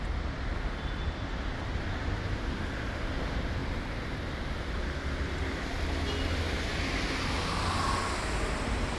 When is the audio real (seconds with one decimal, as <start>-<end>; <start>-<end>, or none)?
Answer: 0.0-9.0